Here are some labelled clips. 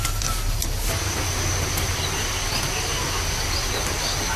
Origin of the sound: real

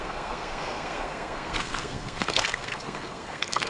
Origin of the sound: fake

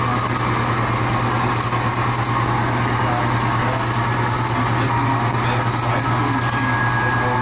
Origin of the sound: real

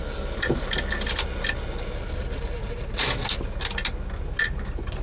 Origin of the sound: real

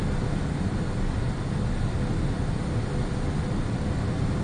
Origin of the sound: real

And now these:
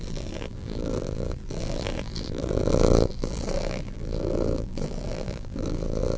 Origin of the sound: fake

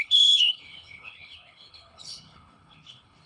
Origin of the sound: fake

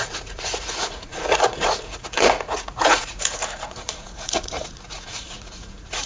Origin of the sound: fake